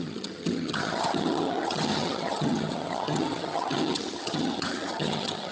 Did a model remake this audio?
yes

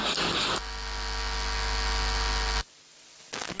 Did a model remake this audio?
no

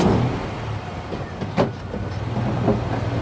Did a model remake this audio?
no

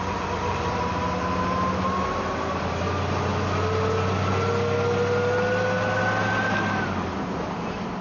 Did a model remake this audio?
no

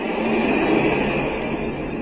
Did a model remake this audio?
no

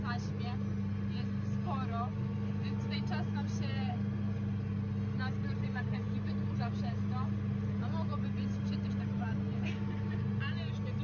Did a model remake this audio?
no